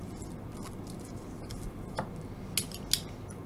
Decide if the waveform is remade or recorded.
recorded